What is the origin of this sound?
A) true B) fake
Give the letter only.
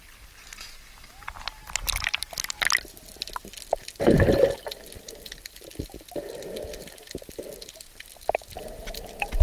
A